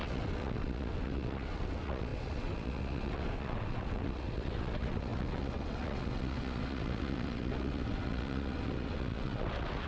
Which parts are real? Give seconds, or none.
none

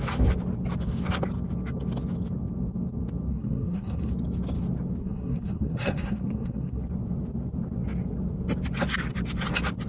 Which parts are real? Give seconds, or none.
0.0-3.3; 4.1-5.0; 6.8-9.9

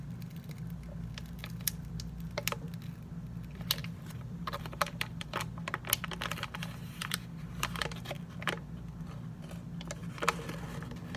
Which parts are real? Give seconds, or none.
0.0-3.8; 5.4-7.0; 7.5-10.0

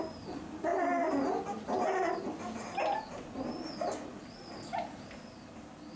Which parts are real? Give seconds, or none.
0.0-6.0

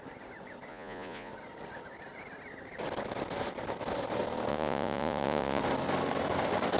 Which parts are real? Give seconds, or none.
0.0-0.7; 1.3-4.5; 5.6-6.8